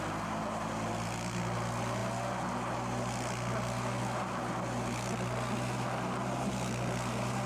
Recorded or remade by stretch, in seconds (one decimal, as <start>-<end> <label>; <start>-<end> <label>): 0.0-7.5 recorded